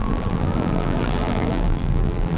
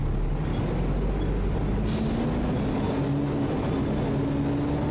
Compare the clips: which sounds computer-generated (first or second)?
first